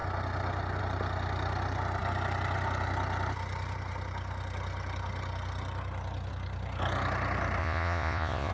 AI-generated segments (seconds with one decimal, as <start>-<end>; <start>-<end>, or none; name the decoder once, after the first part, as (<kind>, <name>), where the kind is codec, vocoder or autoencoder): 7.6-8.5 (vocoder, Vocos)